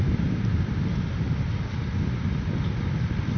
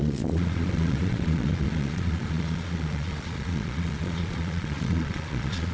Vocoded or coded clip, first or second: second